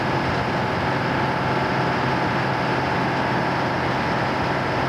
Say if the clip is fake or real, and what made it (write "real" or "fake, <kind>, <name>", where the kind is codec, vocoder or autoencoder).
real